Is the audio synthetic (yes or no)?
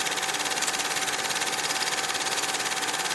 no